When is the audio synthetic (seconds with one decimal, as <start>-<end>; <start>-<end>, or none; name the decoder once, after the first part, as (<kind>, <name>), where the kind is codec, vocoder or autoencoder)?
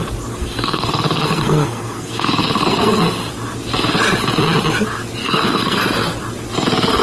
0.4-3.0 (codec, SNAC); 5.2-5.8